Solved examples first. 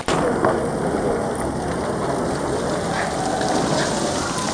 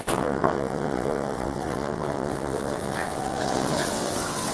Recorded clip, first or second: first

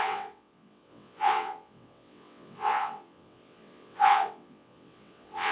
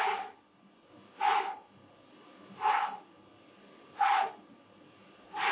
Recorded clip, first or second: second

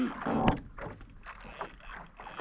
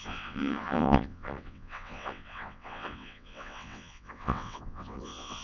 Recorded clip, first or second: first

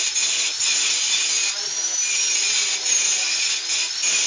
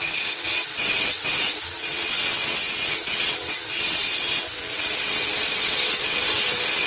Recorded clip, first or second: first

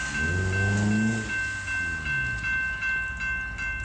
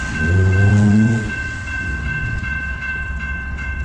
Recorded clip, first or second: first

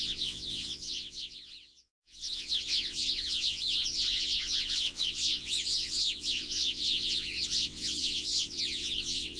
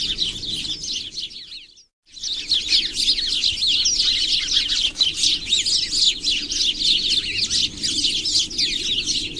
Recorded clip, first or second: second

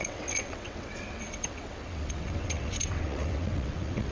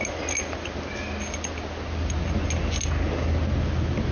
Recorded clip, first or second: second